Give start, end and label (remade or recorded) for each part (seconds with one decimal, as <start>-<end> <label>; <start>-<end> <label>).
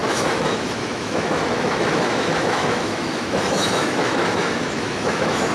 0.0-5.5 remade